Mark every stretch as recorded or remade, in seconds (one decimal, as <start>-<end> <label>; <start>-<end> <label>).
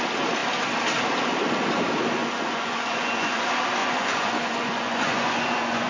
0.0-2.2 recorded; 2.2-3.4 remade; 3.4-3.8 recorded; 3.8-5.9 remade